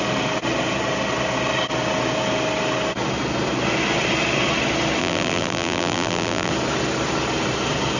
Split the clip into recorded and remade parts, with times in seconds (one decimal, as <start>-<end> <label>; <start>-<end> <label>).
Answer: 0.0-5.0 recorded; 5.0-6.5 remade; 6.5-8.0 recorded

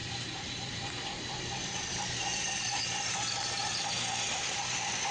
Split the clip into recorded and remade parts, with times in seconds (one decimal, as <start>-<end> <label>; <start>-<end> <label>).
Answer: 0.0-3.1 remade; 3.1-3.6 recorded; 3.6-5.1 remade

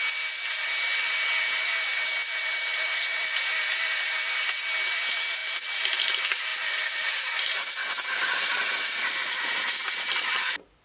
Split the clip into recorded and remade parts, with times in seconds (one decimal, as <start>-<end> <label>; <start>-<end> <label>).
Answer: 0.0-6.5 recorded; 6.5-8.6 remade; 8.6-10.8 recorded

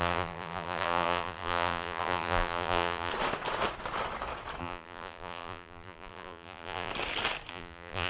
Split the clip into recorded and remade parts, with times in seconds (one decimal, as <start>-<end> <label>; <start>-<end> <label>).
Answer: 0.0-3.1 remade; 3.1-4.6 recorded; 4.6-6.9 remade; 6.9-7.5 recorded; 7.5-8.1 remade

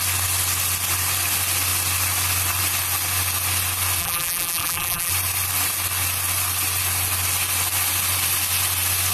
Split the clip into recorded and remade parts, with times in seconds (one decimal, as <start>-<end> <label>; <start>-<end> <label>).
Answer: 0.0-4.0 recorded; 4.0-5.1 remade; 5.1-9.1 recorded

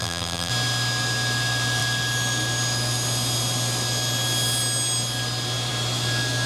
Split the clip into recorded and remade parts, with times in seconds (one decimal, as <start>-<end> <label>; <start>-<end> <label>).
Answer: 0.0-0.5 remade; 0.5-6.5 recorded

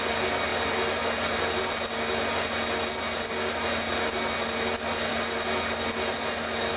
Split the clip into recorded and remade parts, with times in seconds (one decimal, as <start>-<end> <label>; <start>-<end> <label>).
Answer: 0.0-6.8 recorded

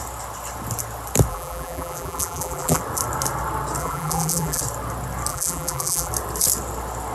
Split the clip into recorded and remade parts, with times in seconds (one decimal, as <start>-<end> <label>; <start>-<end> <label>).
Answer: 0.0-1.3 recorded; 1.3-2.8 remade; 2.8-3.8 recorded; 3.8-4.6 remade; 4.6-5.3 recorded; 5.3-6.1 remade; 6.1-7.1 recorded